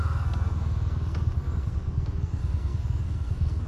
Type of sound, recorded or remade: remade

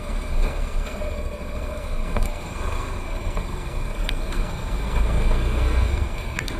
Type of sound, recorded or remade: remade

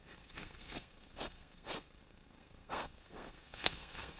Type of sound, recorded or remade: remade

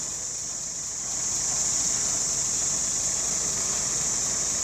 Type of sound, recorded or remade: recorded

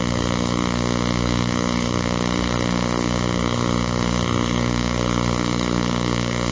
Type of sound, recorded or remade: remade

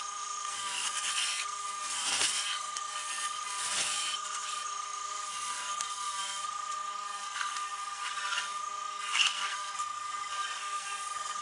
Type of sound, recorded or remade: remade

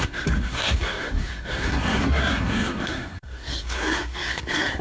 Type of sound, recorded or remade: remade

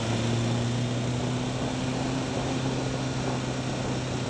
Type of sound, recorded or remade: recorded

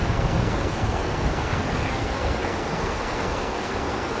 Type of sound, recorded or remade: remade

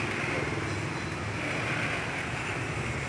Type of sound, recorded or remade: recorded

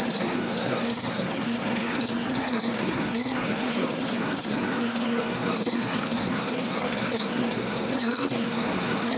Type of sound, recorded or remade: remade